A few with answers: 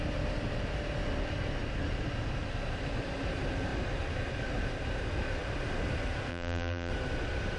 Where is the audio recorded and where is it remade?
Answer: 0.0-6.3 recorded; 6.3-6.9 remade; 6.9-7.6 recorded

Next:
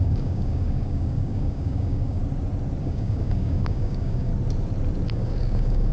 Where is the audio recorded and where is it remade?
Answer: 0.0-2.2 remade; 2.2-2.8 recorded; 2.8-4.3 remade; 4.3-5.1 recorded; 5.1-5.9 remade

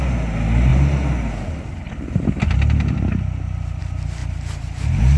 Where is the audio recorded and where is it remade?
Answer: 0.0-4.2 recorded; 4.2-5.2 remade

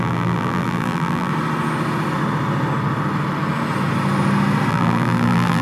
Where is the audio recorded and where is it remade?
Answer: 0.0-1.3 remade; 1.3-4.7 recorded; 4.7-5.6 remade

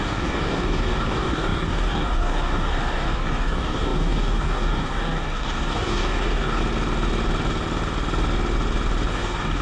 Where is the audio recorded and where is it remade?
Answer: 0.0-6.6 remade; 6.6-9.1 recorded; 9.1-9.6 remade

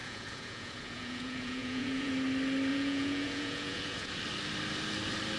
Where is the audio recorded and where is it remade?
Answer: 0.0-2.1 remade; 2.1-2.7 recorded; 2.7-4.1 remade; 4.1-5.4 recorded

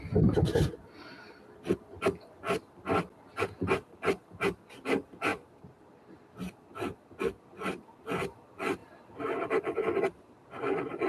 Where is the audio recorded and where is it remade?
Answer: 0.0-11.1 recorded

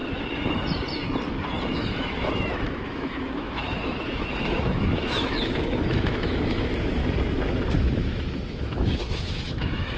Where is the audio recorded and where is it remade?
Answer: 0.0-1.7 recorded; 1.7-7.0 remade; 7.0-7.7 recorded; 7.7-10.0 remade